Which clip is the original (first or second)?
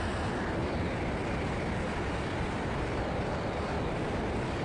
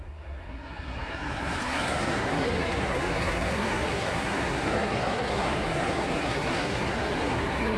first